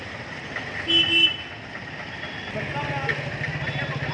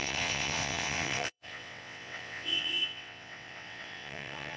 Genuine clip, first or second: first